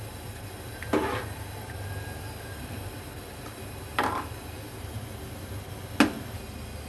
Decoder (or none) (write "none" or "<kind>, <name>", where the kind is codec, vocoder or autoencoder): none